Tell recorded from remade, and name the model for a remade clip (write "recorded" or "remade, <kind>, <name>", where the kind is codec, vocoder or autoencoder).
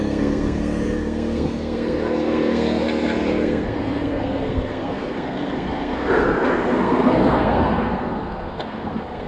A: remade, codec, SNAC